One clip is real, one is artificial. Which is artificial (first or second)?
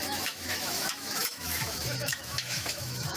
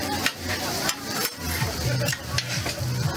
first